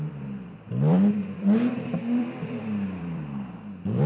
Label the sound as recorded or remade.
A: remade